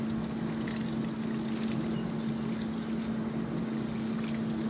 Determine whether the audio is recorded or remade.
recorded